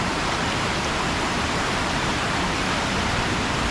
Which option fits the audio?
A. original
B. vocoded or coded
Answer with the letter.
B